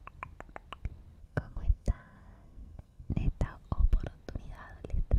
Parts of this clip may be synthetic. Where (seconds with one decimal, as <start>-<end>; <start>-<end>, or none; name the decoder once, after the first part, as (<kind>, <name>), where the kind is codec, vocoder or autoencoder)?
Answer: 1.2-3.1 (codec, SNAC)